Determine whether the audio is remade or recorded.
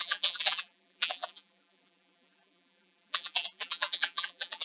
remade